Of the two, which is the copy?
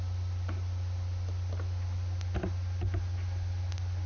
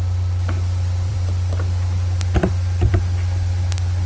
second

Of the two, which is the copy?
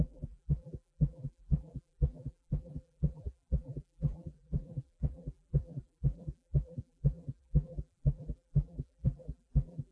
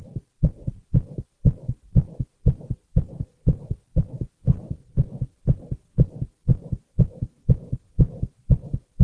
first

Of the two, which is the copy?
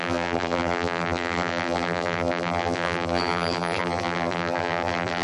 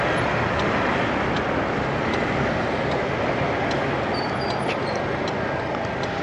first